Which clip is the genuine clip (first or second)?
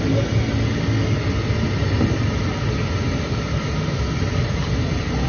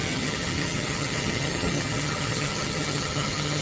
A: first